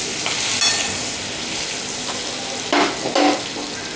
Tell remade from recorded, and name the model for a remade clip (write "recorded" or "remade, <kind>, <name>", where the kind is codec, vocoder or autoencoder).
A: recorded